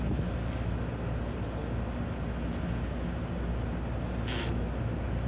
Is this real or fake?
real